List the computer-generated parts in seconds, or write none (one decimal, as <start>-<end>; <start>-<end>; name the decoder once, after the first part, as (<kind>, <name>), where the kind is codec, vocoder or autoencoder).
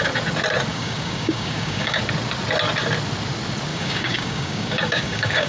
0.7-2.0 (codec, DAC); 3.7-5.5